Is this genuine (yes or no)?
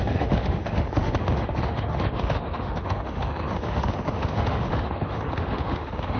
no